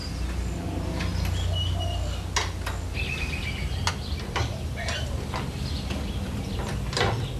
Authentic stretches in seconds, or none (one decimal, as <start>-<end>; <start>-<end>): 0.0-3.9